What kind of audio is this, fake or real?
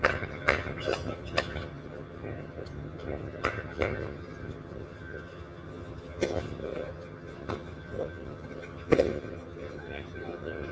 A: fake